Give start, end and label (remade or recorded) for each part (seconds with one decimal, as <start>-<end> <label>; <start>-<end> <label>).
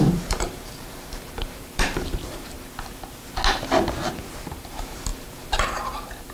0.0-2.7 remade; 2.7-4.5 recorded; 4.5-6.3 remade